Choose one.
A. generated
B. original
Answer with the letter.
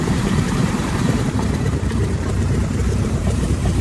A